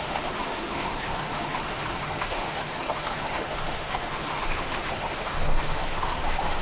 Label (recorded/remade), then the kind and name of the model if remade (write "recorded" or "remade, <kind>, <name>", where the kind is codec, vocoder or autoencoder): remade, autoencoder, DAC-VAE